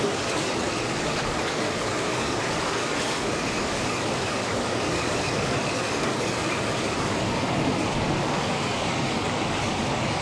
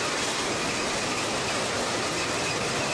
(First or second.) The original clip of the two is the second